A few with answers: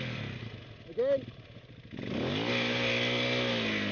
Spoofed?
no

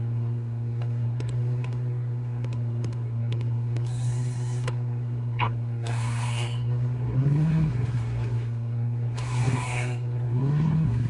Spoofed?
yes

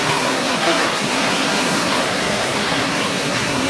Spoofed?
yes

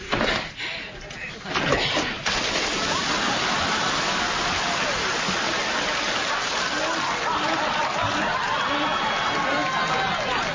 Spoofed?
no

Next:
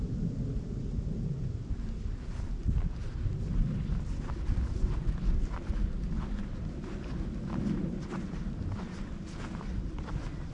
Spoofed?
no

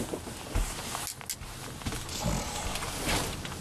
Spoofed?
no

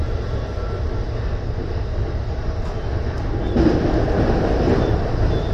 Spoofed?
no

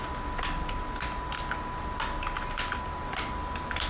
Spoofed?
no